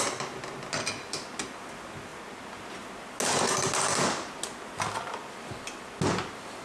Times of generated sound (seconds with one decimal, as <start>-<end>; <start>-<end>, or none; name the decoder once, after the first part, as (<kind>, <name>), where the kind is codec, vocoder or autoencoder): none